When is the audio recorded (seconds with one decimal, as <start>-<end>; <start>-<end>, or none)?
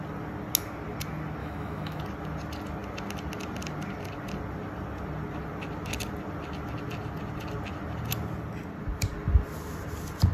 0.0-1.4; 2.0-10.3